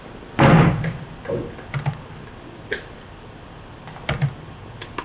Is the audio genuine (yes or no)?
yes